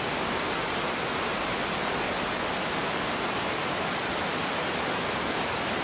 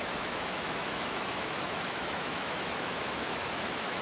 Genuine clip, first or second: first